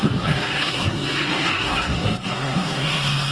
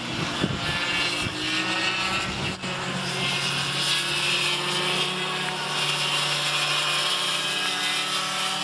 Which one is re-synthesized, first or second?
first